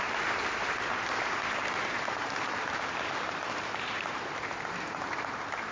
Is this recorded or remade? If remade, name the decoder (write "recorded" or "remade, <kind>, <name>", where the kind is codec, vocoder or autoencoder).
remade, vocoder, BigVGAN v2